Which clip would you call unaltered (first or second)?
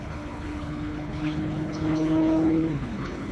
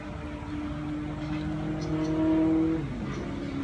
second